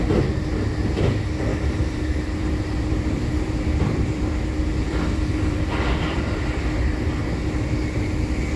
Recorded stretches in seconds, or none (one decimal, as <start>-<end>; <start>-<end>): 0.0-1.5; 6.3-8.6